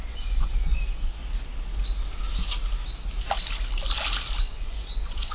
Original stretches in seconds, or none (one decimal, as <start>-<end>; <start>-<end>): 1.2-4.4